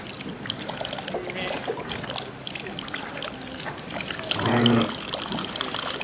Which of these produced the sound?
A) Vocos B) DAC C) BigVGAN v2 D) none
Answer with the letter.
D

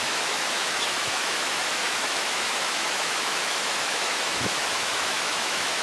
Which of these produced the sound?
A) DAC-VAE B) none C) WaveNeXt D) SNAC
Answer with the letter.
A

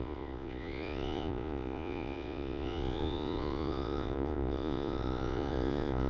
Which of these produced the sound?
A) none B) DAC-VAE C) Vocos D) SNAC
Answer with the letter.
C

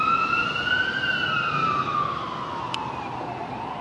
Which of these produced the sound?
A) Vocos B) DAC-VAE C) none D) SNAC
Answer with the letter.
C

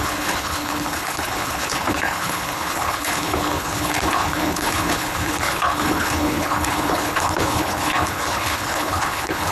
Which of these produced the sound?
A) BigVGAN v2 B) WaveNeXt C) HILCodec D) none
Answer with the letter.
C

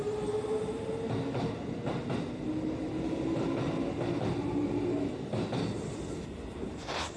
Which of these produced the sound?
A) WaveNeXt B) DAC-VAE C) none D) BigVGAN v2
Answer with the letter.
C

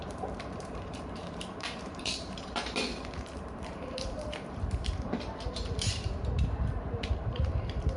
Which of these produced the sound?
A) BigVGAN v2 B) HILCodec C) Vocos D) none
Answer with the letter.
A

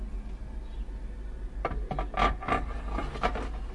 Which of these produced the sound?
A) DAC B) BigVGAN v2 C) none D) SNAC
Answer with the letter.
C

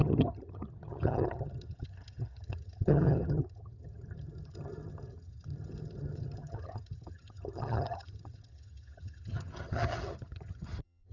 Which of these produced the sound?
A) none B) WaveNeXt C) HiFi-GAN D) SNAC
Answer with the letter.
C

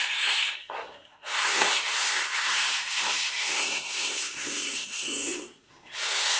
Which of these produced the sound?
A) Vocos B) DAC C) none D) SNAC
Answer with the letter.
D